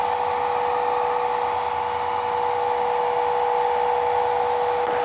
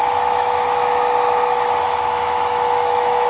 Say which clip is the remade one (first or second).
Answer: second